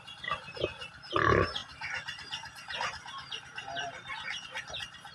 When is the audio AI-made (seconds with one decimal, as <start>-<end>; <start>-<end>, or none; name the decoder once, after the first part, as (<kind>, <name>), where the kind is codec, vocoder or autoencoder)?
1.6-5.1 (vocoder, BigVGAN v2)